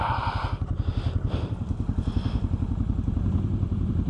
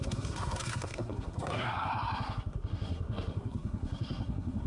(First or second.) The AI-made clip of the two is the second